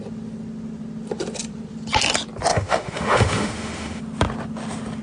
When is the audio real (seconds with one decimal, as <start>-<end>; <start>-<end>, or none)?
0.0-2.5; 4.0-5.0